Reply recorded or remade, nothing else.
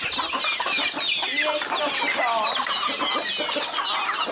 recorded